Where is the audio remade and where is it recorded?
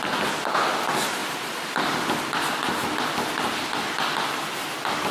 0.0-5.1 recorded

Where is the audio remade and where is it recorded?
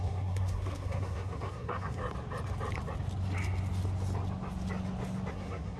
0.0-2.0 remade; 2.0-5.3 recorded; 5.3-5.8 remade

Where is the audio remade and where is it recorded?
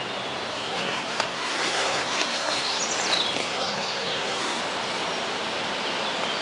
0.0-0.5 recorded; 0.5-2.8 remade; 2.8-3.4 recorded; 3.4-4.6 remade; 4.6-6.4 recorded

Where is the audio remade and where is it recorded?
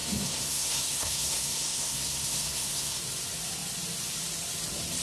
0.0-3.0 remade; 3.0-5.0 recorded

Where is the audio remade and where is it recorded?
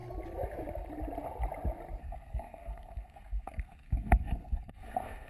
0.0-2.0 recorded; 2.0-5.3 remade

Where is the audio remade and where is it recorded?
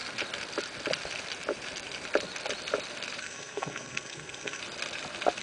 0.0-3.2 recorded; 3.2-4.6 remade; 4.6-5.4 recorded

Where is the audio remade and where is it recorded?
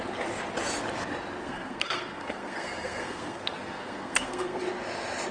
0.0-1.4 recorded; 1.4-4.6 remade; 4.6-5.3 recorded